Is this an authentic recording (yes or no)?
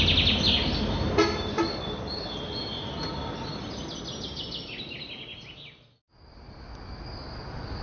yes